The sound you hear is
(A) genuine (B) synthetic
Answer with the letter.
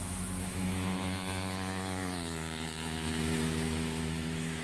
B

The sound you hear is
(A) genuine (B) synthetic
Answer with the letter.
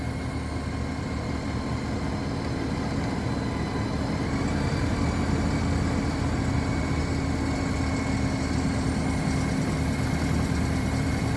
A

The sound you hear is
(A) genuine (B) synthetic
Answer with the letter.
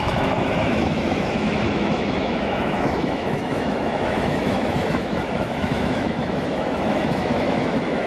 B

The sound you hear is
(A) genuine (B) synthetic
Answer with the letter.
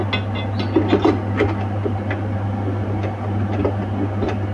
A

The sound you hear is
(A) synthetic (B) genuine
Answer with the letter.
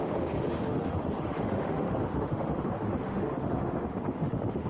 A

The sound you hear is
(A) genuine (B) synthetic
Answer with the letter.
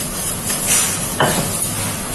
A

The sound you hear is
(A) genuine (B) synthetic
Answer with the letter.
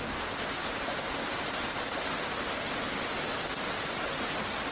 A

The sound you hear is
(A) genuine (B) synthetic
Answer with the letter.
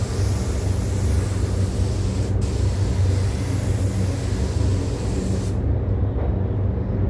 A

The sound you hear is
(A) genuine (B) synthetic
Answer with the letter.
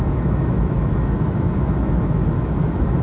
B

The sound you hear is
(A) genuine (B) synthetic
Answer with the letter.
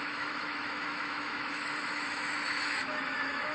B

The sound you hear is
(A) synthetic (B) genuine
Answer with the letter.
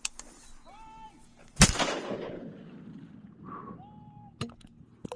B